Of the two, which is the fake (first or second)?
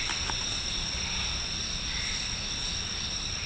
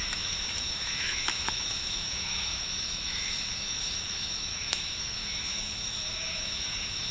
second